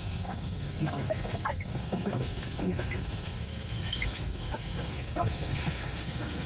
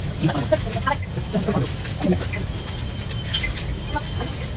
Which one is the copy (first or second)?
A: first